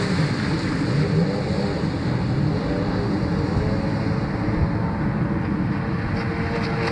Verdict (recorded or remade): recorded